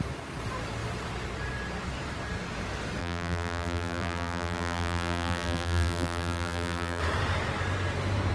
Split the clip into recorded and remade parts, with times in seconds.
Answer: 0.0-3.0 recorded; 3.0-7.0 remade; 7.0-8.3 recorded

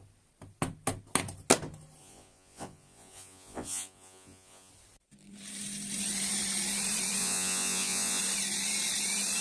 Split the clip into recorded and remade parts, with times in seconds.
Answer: 0.0-2.0 recorded; 2.0-4.7 remade; 4.7-7.2 recorded; 7.2-8.2 remade; 8.2-9.4 recorded

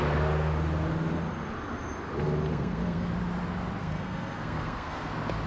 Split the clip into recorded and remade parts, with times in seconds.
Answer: 0.0-2.5 recorded; 2.5-3.1 remade; 3.1-3.8 recorded; 3.8-5.1 remade; 5.1-5.5 recorded